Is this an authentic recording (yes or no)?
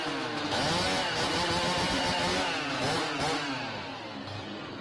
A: yes